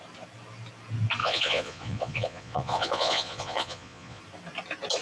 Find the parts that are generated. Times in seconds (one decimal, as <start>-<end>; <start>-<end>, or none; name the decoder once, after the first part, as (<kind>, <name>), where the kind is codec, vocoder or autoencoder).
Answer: 1.2-4.2 (vocoder, Vocos)